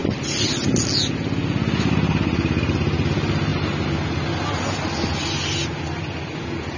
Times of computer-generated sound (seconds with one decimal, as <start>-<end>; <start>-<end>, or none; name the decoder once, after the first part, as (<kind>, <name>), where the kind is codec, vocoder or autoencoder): none